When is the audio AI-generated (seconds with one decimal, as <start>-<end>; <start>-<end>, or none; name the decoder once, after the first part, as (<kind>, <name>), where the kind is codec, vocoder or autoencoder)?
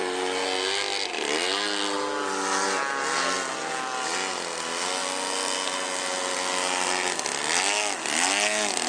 none